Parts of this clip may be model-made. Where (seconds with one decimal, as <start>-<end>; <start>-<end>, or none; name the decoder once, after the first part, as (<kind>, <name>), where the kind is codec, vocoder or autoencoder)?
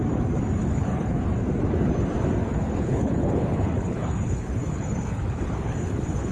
0.6-1.2 (codec, HILCodec); 2.4-6.3